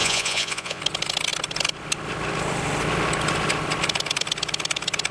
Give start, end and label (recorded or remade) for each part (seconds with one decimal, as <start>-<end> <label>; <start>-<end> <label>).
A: 0.0-0.8 remade; 0.8-5.1 recorded